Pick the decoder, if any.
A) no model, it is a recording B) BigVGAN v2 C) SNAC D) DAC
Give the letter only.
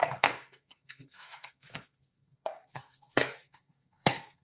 C